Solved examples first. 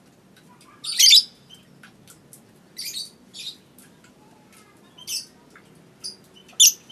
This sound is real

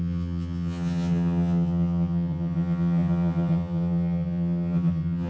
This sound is fake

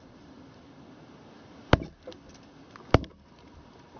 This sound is real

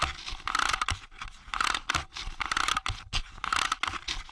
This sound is real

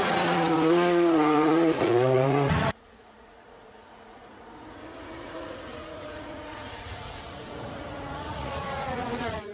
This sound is fake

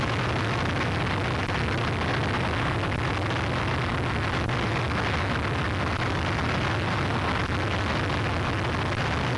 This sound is real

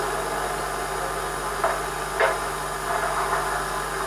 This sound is real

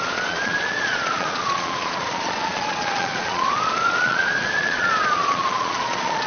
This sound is fake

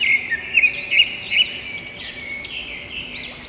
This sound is real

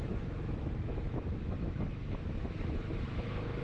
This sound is fake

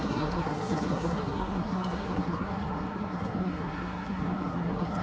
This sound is fake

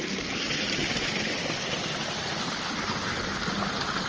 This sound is real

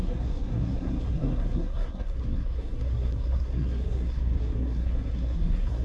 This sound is fake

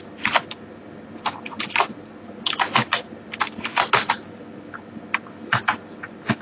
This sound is real